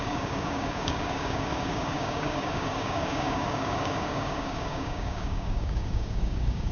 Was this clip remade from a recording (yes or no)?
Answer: yes